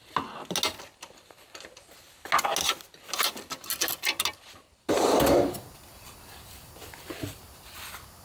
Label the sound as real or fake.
real